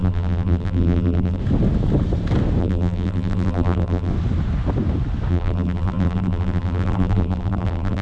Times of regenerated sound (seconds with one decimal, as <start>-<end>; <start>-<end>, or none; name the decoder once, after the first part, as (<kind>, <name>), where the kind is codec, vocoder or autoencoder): 0.0-1.4 (vocoder, BigVGAN v2); 2.6-4.1; 5.3-8.0